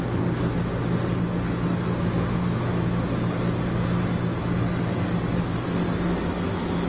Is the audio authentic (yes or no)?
yes